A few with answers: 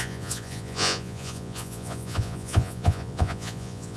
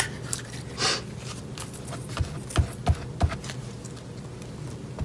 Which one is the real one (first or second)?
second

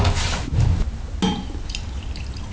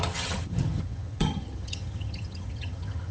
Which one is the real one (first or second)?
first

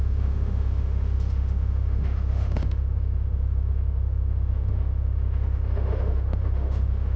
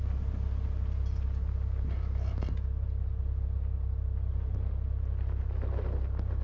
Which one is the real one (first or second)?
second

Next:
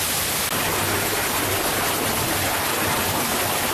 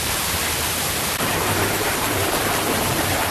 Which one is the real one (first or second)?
first